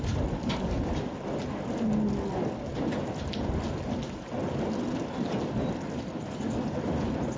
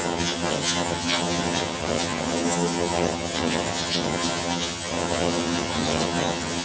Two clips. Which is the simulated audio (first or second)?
second